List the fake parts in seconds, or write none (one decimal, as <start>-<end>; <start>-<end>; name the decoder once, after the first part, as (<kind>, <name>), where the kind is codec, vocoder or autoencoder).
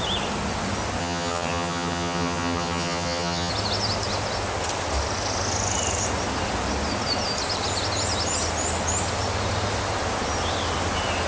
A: 1.0-3.5 (vocoder, HiFi-GAN)